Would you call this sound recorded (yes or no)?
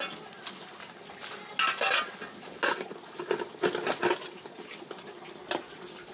yes